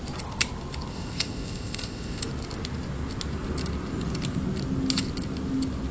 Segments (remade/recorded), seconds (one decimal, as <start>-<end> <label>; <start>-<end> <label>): 0.0-0.9 recorded; 0.9-2.2 remade; 2.2-5.9 recorded